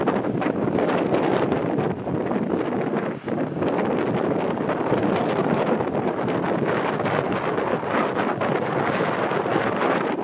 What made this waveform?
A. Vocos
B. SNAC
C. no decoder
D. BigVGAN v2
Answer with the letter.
C